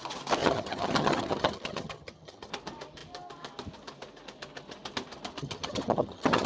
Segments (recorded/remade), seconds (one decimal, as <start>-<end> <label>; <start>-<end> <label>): 0.0-0.4 recorded; 0.4-2.5 remade; 2.5-5.4 recorded; 5.4-6.5 remade